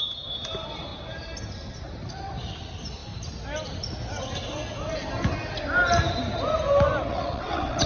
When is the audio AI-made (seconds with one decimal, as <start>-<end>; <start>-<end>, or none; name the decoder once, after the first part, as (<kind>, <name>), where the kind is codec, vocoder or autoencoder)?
7.1-7.9 (vocoder, WaveNeXt)